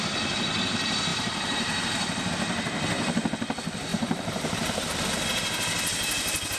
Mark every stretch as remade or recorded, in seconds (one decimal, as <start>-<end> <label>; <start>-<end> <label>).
0.0-1.1 recorded; 1.1-2.3 remade; 2.3-3.9 recorded; 3.9-5.0 remade; 5.0-6.6 recorded